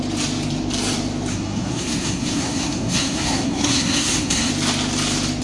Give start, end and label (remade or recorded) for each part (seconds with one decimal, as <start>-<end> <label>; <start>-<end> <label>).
0.0-1.3 recorded; 1.3-4.5 remade; 4.5-5.4 recorded